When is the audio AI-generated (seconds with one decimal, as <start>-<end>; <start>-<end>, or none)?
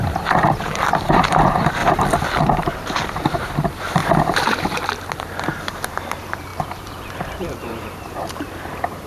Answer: 0.0-1.8; 2.4-4.0; 5.6-9.1